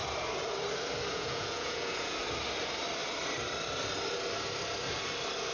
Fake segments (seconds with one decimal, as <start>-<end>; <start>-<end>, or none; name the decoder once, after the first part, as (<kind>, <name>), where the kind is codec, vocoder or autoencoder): 1.1-2.2 (vocoder, Vocos)